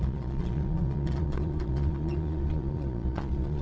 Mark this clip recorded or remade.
remade